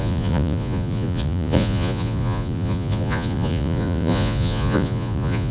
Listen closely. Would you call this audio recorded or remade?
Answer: remade